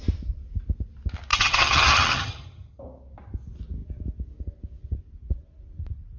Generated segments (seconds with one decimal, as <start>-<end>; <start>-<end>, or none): 1.3-2.8